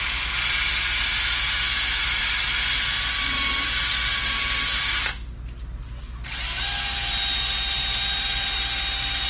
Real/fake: real